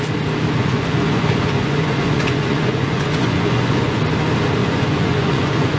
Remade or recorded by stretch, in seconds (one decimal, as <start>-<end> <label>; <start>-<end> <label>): 0.0-0.6 recorded; 0.6-4.0 remade; 4.0-4.6 recorded; 4.6-5.8 remade